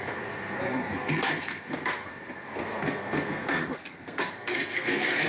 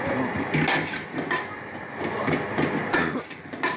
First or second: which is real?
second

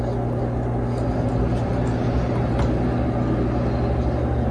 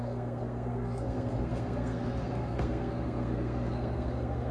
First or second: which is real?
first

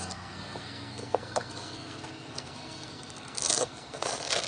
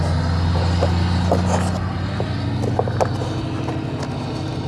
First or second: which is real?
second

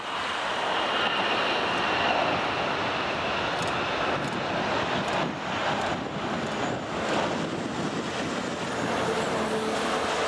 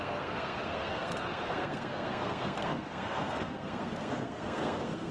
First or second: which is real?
first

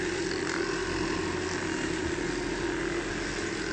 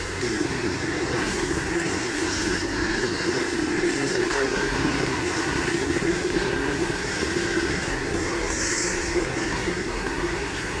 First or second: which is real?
first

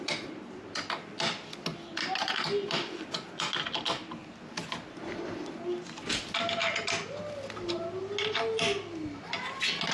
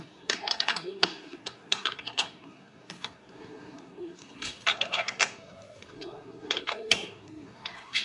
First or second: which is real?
first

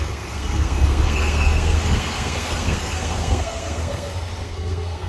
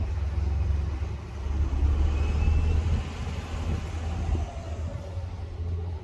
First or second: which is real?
second